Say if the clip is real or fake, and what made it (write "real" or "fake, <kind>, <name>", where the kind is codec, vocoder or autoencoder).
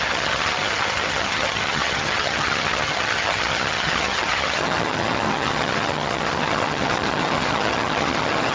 fake, vocoder, HiFi-GAN